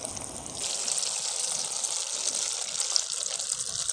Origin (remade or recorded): recorded